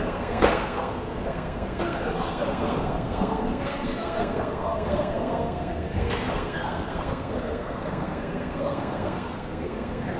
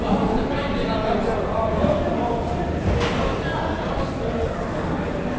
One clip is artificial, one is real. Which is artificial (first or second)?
first